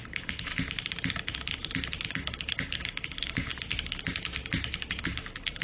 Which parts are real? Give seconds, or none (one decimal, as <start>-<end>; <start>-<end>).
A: 0.5-2.1; 3.5-5.0